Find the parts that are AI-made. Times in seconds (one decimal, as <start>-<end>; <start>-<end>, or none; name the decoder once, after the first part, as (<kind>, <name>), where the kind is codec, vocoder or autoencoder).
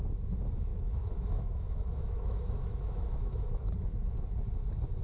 0.7-3.7 (autoencoder, DAC-VAE)